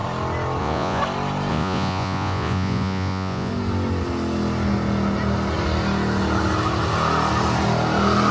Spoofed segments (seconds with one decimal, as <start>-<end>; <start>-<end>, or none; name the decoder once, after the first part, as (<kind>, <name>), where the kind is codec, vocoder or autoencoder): 0.6-1.0 (vocoder, Vocos); 1.5-3.5